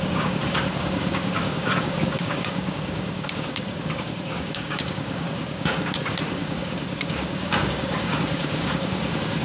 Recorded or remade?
remade